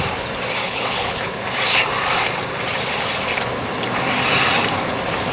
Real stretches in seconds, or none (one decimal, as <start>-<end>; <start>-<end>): 0.0-0.6; 1.3-5.3